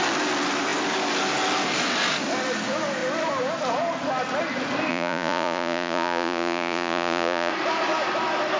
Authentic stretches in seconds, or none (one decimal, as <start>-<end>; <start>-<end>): 0.0-4.9; 7.5-8.6